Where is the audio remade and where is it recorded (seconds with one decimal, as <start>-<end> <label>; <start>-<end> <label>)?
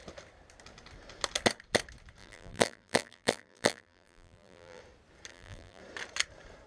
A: 0.0-2.2 recorded; 2.2-4.8 remade; 4.8-5.3 recorded; 5.3-5.8 remade; 5.8-6.7 recorded